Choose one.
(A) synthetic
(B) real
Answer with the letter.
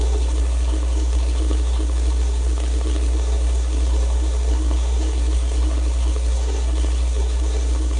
A